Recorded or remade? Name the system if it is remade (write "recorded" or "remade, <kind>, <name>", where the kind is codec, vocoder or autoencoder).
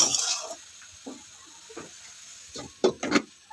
recorded